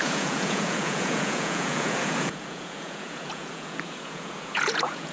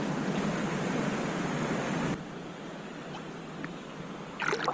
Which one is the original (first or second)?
second